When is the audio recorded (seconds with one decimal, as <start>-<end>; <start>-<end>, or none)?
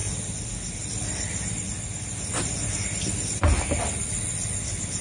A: 0.0-5.0